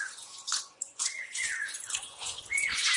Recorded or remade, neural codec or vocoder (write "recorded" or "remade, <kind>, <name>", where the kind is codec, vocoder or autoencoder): remade, vocoder, Vocos